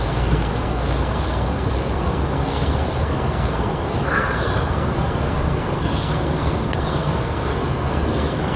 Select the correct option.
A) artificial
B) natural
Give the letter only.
A